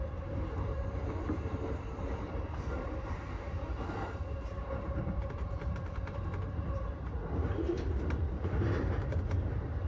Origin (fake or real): fake